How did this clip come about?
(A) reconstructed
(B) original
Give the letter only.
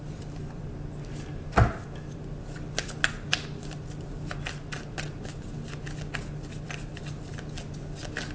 B